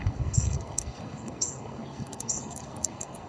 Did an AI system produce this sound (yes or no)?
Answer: yes